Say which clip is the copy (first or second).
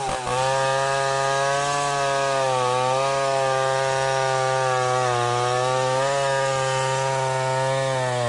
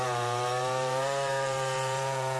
second